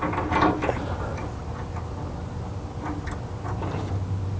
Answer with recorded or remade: recorded